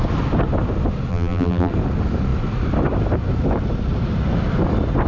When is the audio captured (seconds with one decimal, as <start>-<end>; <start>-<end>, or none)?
0.0-1.1; 1.7-5.1